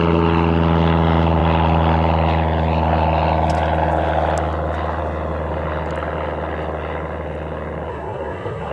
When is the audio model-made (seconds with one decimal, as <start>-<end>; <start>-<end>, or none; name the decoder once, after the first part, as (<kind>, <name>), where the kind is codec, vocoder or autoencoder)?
7.9-8.7 (codec, SNAC)